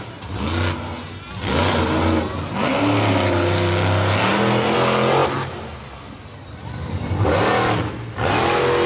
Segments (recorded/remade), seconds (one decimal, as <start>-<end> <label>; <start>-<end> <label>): 0.0-8.9 recorded